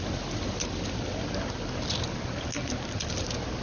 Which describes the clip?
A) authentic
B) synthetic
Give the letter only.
A